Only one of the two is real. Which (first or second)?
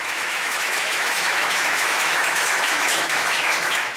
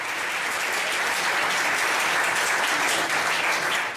second